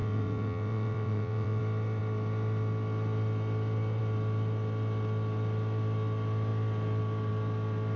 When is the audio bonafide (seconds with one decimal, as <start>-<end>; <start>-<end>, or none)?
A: 1.6-8.0